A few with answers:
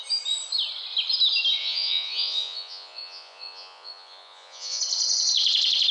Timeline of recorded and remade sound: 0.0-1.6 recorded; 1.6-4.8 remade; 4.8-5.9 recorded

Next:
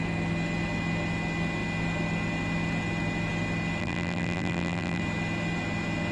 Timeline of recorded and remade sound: 0.0-3.8 recorded; 3.8-5.0 remade; 5.0-6.1 recorded

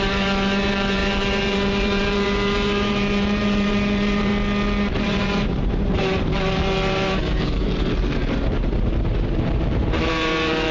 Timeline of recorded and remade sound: 0.0-4.3 remade; 4.3-4.9 recorded; 4.9-10.7 remade

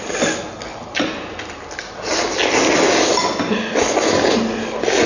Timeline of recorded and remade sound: 0.0-5.1 recorded

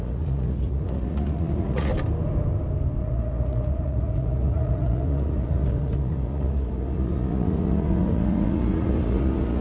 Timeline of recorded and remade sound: 0.0-1.9 remade; 1.9-3.0 recorded; 3.0-9.6 remade